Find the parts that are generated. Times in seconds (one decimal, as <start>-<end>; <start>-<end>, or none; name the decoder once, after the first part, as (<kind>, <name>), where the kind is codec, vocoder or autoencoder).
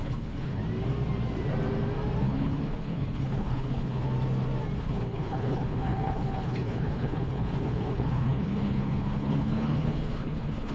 0.0-0.6 (codec, HILCodec); 2.2-4.1; 4.8-10.7